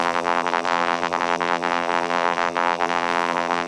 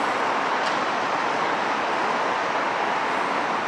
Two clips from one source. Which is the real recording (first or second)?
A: second